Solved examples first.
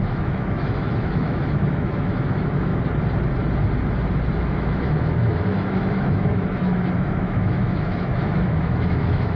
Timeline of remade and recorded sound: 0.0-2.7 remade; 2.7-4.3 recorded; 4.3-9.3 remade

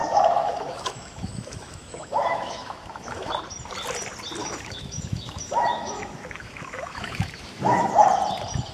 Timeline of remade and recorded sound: 0.0-3.3 remade; 3.3-4.4 recorded; 4.4-7.9 remade; 7.9-8.7 recorded

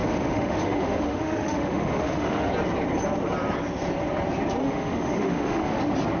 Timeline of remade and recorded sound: 0.0-2.5 remade; 2.5-4.6 recorded; 4.6-5.8 remade; 5.8-6.2 recorded